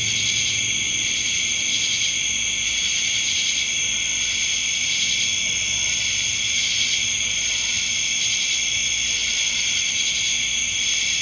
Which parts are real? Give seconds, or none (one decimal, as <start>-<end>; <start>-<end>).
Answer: 0.0-11.2